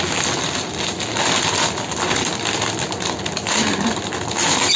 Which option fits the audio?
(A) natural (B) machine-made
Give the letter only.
A